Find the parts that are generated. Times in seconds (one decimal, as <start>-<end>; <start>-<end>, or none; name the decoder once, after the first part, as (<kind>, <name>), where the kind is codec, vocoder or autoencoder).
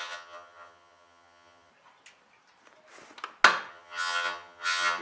0.0-1.7 (vocoder, HiFi-GAN); 3.7-5.0